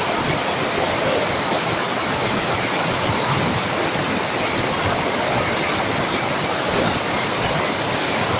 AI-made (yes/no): no